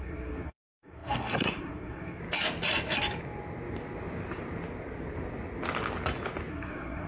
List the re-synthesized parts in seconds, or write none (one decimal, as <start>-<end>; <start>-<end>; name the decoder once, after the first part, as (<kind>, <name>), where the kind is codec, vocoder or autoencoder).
0.0-2.2 (codec, SNAC); 6.5-7.1